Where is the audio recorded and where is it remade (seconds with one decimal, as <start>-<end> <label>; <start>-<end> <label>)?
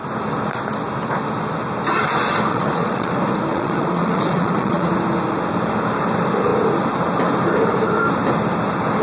0.0-2.5 recorded; 2.5-3.1 remade; 3.1-3.5 recorded; 3.5-4.9 remade; 4.9-9.0 recorded